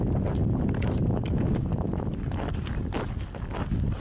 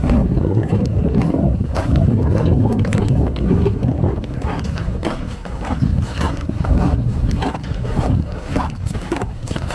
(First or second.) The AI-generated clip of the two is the second